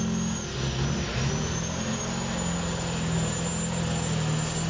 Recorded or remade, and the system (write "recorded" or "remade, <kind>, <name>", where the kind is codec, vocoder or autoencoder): recorded